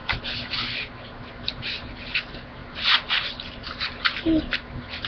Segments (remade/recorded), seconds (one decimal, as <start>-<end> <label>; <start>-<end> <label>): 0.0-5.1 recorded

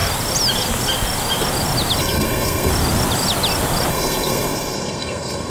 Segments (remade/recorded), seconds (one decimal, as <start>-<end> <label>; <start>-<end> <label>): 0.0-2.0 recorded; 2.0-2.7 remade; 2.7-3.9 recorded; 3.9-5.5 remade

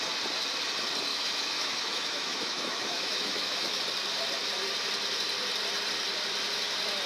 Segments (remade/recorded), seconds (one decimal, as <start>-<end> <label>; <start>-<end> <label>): 0.0-1.1 recorded; 1.1-3.8 remade; 3.8-7.1 recorded

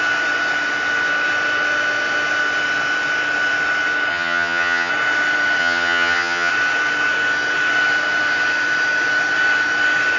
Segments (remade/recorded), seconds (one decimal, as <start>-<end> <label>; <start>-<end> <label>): 0.0-4.1 recorded; 4.1-4.9 remade; 4.9-5.6 recorded; 5.6-6.5 remade; 6.5-10.2 recorded